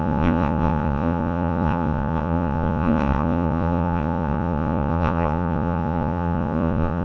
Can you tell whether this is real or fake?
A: fake